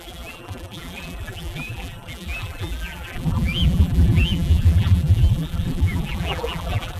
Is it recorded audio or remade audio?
remade